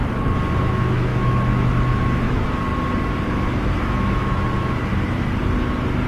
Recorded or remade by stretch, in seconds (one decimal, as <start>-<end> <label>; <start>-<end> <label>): 0.0-0.6 recorded; 0.6-2.7 remade; 2.7-3.3 recorded; 3.3-4.9 remade; 4.9-6.1 recorded